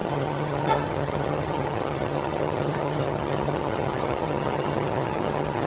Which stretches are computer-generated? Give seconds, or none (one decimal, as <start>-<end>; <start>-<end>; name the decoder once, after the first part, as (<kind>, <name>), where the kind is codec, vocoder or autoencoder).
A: 0.0-5.7 (vocoder, HiFi-GAN)